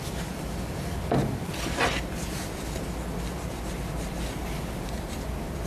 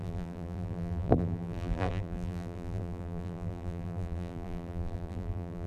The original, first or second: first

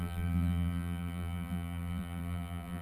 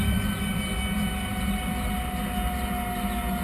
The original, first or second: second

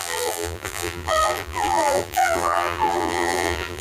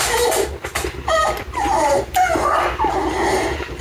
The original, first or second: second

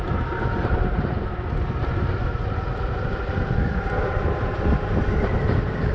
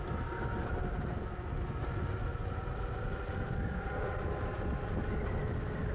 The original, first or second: second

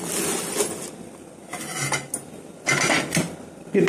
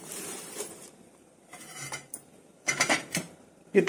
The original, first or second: first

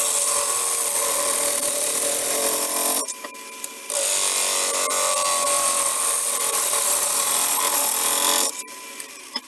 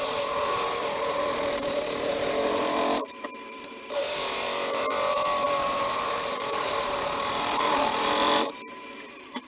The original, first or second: first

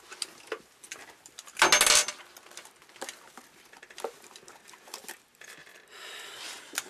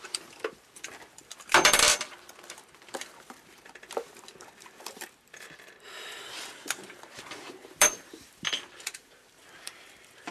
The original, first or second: first